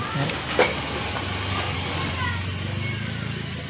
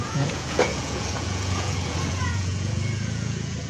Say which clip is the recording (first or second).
first